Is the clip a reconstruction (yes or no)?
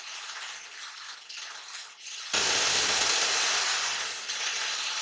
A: no